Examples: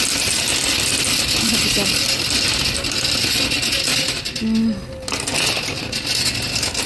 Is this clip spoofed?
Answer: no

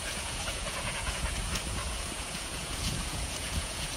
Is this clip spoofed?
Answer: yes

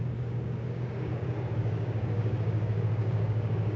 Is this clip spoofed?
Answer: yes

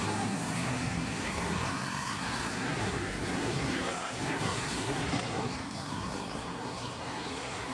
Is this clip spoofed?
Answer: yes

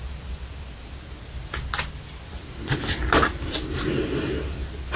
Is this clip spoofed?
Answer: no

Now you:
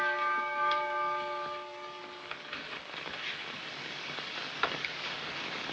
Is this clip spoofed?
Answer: yes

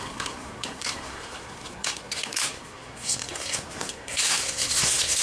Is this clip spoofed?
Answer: yes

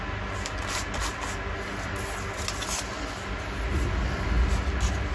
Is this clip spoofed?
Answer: no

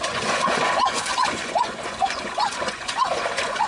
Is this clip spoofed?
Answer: yes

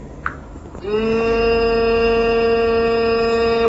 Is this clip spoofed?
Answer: no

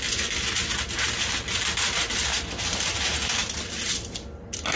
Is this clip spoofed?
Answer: no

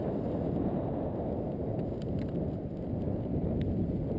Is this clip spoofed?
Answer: no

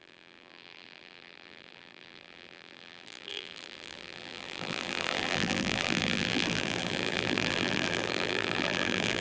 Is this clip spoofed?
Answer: yes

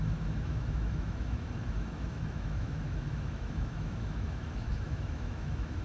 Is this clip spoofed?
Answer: yes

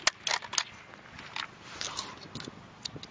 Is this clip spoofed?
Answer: no